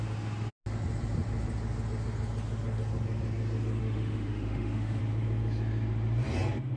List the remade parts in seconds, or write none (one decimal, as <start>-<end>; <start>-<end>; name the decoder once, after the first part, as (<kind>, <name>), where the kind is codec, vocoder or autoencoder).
3.8-5.0 (autoencoder, DAC-VAE)